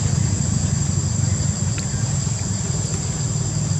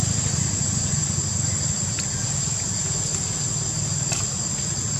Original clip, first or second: second